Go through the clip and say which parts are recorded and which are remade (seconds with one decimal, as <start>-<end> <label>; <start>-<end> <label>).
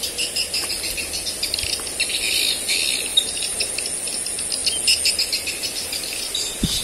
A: 0.0-3.1 recorded; 3.1-3.7 remade; 3.7-6.8 recorded